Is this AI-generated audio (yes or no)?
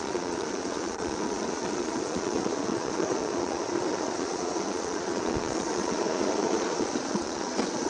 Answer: yes